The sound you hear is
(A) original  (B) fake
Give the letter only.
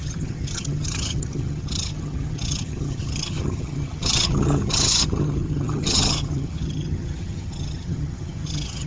B